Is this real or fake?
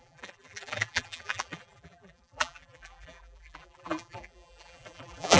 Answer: fake